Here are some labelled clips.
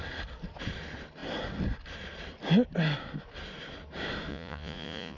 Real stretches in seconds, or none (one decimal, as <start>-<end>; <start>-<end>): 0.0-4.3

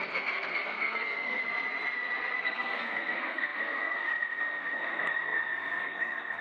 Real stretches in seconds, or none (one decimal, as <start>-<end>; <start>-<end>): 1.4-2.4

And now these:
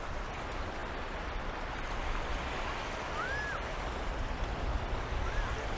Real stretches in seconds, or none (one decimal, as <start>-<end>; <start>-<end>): 0.0-5.8

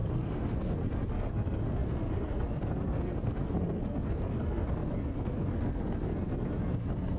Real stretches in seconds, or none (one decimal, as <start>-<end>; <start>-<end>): none

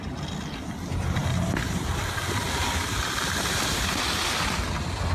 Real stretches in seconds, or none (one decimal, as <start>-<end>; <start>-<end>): 0.0-5.1

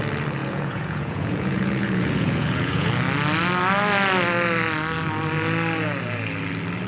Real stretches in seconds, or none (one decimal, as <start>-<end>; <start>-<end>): 0.0-0.4; 2.9-6.9